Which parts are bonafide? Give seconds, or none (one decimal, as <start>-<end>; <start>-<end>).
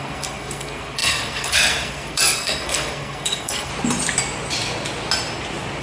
3.7-5.8